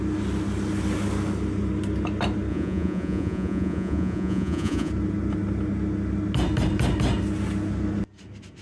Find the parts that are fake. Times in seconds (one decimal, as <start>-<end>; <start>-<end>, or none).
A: 2.5-4.9